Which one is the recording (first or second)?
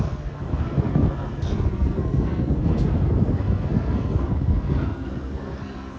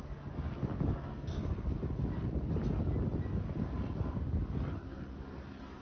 second